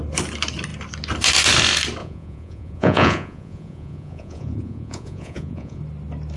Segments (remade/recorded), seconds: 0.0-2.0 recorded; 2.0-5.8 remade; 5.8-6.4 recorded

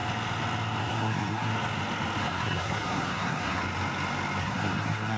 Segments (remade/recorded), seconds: 0.0-0.8 recorded; 0.8-1.5 remade; 1.5-2.2 recorded; 2.2-3.6 remade; 3.6-4.4 recorded; 4.4-5.2 remade

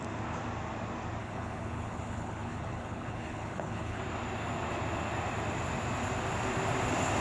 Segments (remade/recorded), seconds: 0.0-1.2 recorded; 1.2-4.0 remade; 4.0-7.2 recorded

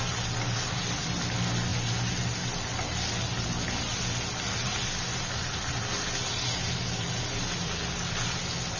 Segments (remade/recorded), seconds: 0.0-8.8 recorded

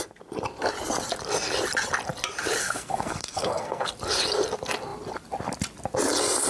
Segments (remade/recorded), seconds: 0.0-2.6 recorded; 2.6-3.9 remade; 3.9-6.5 recorded

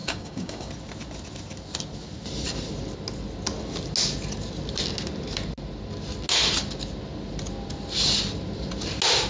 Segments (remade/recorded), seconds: 0.0-0.7 remade; 0.7-9.3 recorded